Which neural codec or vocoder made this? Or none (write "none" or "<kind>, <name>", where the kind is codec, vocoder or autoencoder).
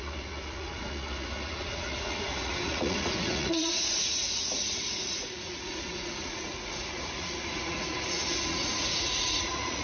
vocoder, Vocos